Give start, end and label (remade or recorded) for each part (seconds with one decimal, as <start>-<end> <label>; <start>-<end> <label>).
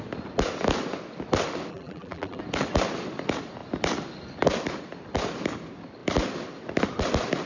0.0-1.7 recorded; 1.7-2.4 remade; 2.4-7.5 recorded